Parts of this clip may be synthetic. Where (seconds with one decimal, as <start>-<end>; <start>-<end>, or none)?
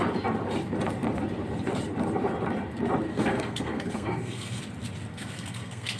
3.1-4.6; 5.1-6.0